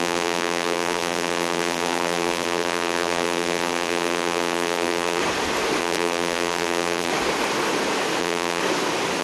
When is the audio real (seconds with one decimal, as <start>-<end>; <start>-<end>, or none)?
5.2-5.8; 7.1-8.2; 8.6-9.2